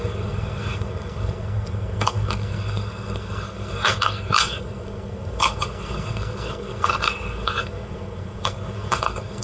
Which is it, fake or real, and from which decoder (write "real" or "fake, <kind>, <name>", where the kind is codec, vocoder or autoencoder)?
fake, codec, SNAC